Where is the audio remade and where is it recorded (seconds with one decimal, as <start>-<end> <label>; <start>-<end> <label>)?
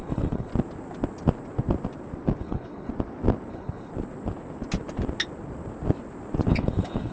0.0-0.5 remade; 0.5-2.4 recorded; 2.4-2.9 remade; 2.9-3.5 recorded; 3.5-3.9 remade; 3.9-6.5 recorded; 6.5-7.1 remade